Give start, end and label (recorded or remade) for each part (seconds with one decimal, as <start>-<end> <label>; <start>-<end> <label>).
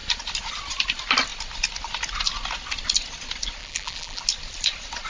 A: 0.0-3.6 recorded; 3.6-4.2 remade; 4.2-5.1 recorded